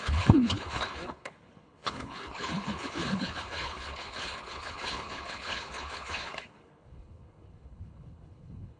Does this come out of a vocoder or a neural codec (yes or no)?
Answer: yes